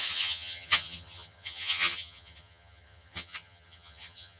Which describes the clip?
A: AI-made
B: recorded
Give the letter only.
A